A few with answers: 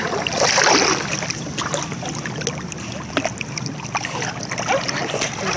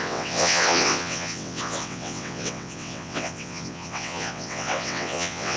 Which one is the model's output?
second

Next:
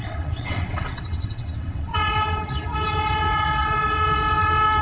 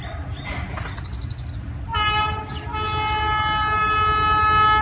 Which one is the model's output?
first